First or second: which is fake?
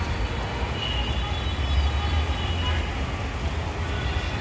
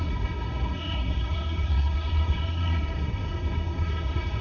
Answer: second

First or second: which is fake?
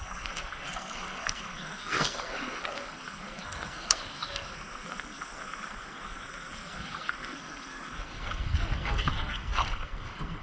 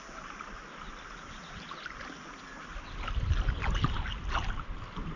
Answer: first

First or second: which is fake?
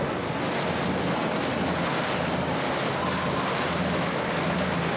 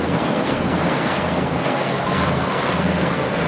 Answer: second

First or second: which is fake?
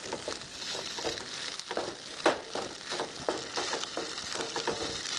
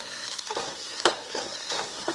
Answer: second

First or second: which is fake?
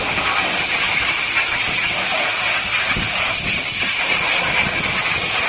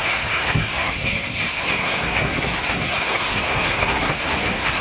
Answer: second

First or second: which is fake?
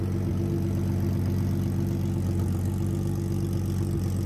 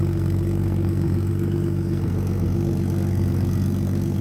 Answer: second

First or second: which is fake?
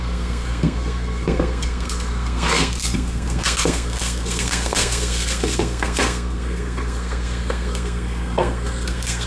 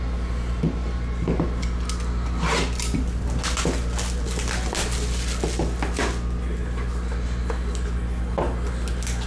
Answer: first